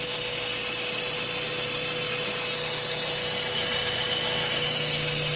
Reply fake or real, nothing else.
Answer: real